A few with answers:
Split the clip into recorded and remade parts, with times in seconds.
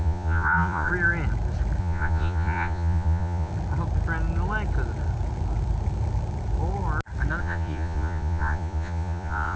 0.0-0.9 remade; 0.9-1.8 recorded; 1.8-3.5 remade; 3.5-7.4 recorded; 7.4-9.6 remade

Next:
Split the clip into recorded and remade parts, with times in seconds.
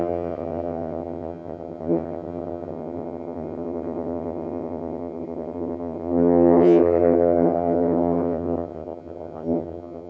0.0-10.1 remade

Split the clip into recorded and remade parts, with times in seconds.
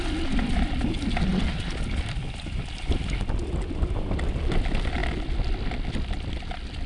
0.0-6.9 recorded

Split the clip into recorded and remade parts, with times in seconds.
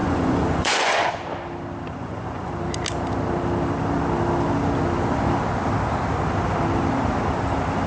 0.0-1.1 remade; 1.1-2.0 recorded; 2.0-2.5 remade; 2.5-7.9 recorded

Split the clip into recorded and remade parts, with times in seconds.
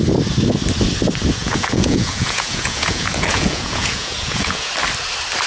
0.0-1.4 recorded; 1.4-4.7 remade; 4.7-5.5 recorded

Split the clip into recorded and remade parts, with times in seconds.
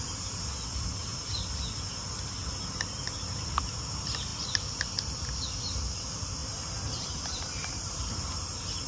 0.0-6.4 recorded; 6.4-8.1 remade; 8.1-8.9 recorded